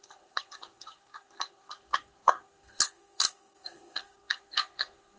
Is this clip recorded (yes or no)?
no